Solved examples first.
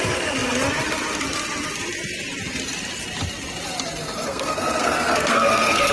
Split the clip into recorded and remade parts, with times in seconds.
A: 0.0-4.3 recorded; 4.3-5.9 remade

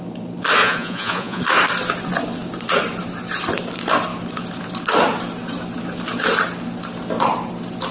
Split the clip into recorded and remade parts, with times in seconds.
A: 0.0-0.6 recorded; 0.6-1.4 remade; 1.4-7.9 recorded

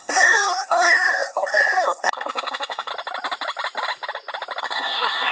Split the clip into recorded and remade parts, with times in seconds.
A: 0.0-2.9 remade; 2.9-4.6 recorded; 4.6-5.3 remade

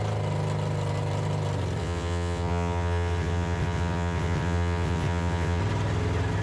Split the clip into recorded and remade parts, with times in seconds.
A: 0.0-1.8 recorded; 1.8-5.6 remade; 5.6-6.4 recorded

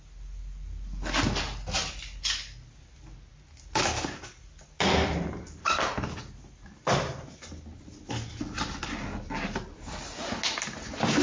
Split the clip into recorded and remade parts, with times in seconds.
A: 0.0-11.2 recorded